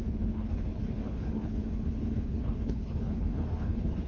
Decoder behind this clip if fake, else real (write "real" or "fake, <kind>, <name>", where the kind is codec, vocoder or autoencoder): fake, codec, HILCodec